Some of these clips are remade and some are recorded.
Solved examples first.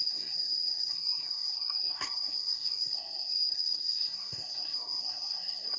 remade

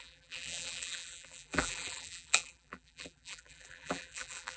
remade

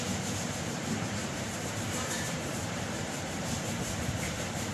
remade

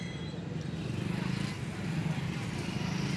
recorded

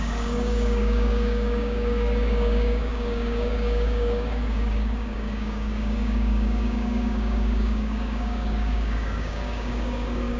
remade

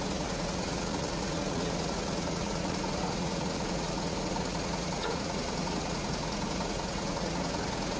remade